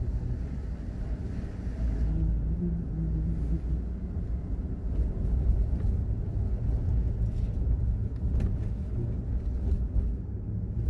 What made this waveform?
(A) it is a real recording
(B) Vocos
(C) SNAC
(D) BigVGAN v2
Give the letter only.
A